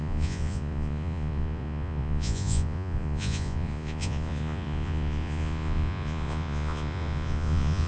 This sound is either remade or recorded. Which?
remade